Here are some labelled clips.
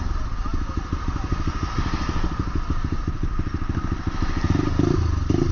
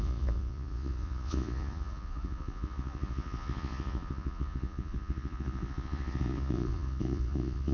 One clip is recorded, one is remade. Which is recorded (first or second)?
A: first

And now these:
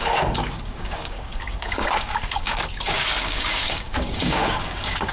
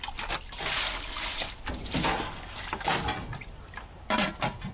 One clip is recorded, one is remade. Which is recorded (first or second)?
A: second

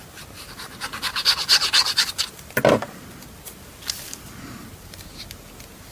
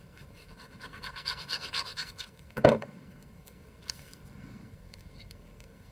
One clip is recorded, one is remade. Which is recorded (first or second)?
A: first